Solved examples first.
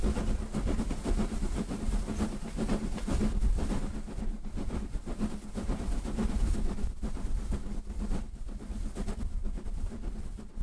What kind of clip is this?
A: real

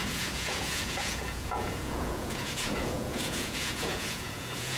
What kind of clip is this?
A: fake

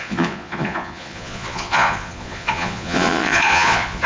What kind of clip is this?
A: fake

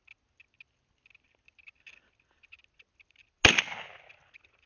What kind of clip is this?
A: real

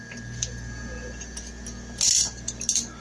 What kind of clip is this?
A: real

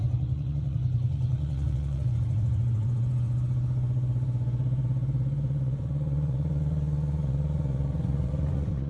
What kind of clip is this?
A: fake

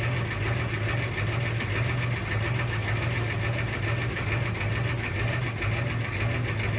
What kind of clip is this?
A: real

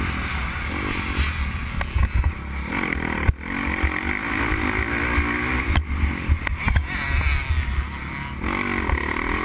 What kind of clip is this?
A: real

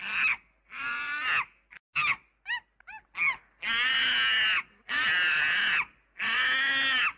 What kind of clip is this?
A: real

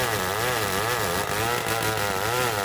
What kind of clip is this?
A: real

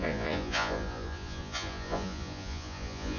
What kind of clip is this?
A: fake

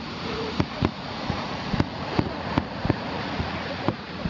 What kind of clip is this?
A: fake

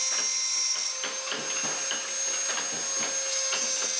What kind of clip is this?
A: real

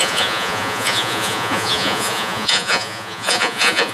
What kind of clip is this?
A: fake